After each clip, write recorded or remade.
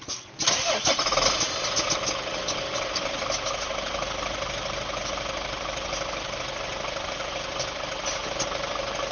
recorded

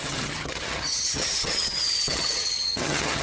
remade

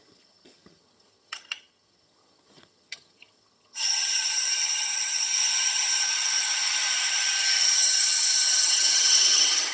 remade